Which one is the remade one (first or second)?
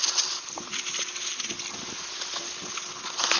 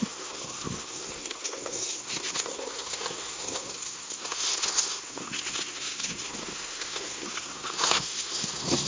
second